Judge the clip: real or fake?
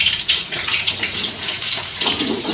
fake